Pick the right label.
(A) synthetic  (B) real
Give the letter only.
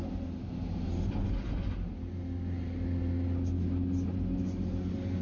B